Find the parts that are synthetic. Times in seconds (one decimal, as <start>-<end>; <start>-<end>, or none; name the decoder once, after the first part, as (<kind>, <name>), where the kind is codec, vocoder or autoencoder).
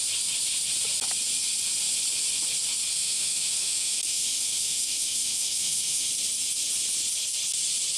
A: 2.9-6.1 (autoencoder, DAC-VAE)